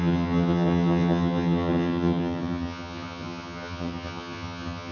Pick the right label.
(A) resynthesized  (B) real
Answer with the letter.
A